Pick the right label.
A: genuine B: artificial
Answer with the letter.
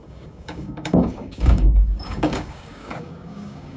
B